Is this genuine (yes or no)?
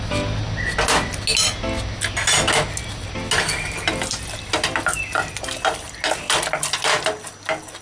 yes